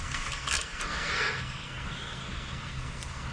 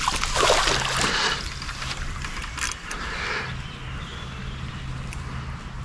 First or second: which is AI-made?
first